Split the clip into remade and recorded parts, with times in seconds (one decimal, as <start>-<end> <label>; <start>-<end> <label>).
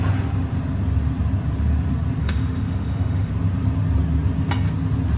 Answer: 0.0-2.2 recorded; 2.2-3.3 remade; 3.3-5.2 recorded